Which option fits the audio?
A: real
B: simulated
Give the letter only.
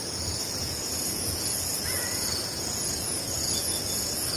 B